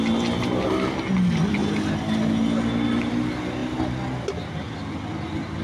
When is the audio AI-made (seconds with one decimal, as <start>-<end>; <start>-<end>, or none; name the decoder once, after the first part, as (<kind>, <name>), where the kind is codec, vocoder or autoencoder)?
none